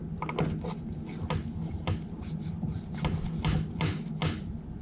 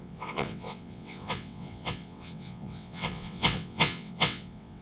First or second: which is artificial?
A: second